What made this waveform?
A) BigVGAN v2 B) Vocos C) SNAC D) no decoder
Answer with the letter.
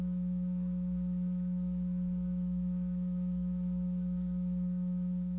C